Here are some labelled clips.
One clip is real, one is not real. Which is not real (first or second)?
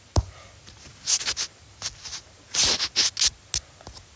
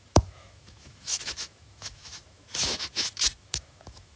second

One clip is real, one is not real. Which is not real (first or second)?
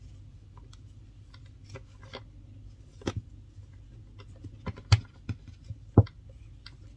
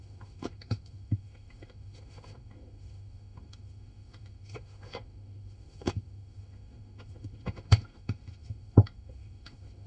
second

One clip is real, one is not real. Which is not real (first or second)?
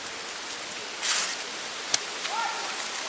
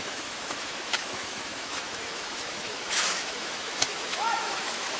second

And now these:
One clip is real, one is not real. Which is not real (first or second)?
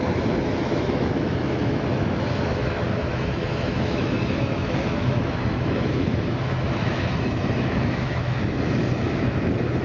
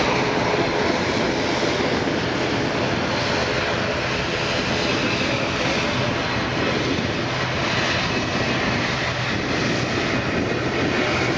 first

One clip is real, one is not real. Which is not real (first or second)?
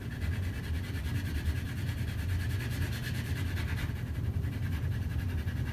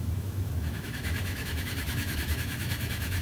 second